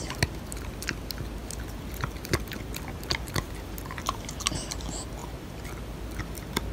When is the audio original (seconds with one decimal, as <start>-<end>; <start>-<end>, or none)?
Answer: 0.0-2.9; 4.6-5.2; 5.7-6.7